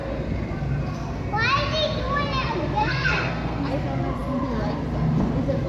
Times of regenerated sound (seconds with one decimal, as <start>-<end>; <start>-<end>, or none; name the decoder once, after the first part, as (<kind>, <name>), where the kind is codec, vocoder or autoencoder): 2.8-3.6 (codec, SNAC)